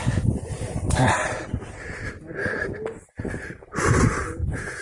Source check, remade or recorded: recorded